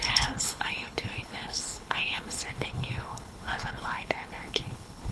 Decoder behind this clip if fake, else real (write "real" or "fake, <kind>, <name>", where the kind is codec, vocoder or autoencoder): fake, codec, HILCodec